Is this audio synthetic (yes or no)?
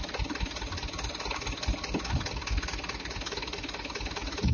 no